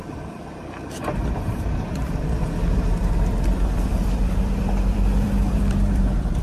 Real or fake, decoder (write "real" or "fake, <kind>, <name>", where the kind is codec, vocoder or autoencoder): fake, vocoder, BigVGAN v2